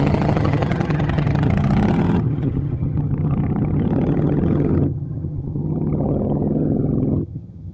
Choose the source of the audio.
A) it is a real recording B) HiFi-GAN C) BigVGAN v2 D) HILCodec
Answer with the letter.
B